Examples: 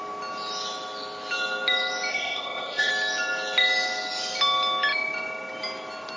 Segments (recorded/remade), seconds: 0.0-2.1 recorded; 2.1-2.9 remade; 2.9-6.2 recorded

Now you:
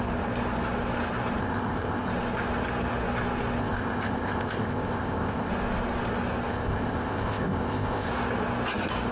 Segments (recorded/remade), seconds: 0.0-1.4 recorded; 1.4-2.1 remade; 2.1-3.6 recorded; 3.6-5.5 remade; 5.5-6.5 recorded; 6.5-8.1 remade; 8.1-9.1 recorded

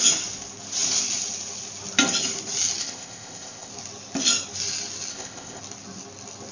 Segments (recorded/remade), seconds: 0.0-2.8 recorded; 2.8-3.7 remade; 3.7-5.1 recorded; 5.1-5.6 remade; 5.6-6.5 recorded

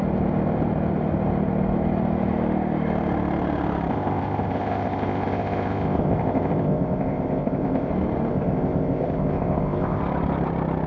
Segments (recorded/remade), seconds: 0.0-3.9 recorded; 3.9-7.9 remade; 7.9-8.3 recorded; 8.3-10.0 remade; 10.0-10.9 recorded

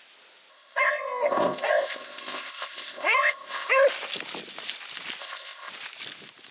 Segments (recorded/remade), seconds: 0.0-0.5 recorded; 0.5-3.7 remade; 3.7-5.2 recorded; 5.2-5.7 remade; 5.7-6.5 recorded

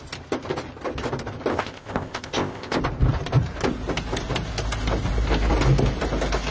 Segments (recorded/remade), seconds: 0.0-1.5 recorded; 1.5-2.8 remade; 2.8-6.5 recorded